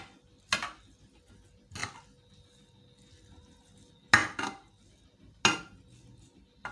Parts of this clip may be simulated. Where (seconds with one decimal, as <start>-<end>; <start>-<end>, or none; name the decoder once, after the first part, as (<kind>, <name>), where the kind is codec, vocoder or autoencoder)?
none